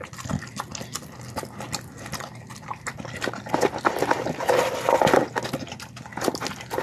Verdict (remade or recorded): recorded